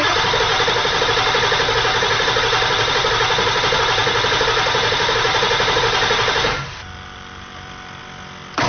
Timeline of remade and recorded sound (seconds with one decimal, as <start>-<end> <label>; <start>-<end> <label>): 0.0-4.0 recorded; 4.0-8.0 remade; 8.0-8.7 recorded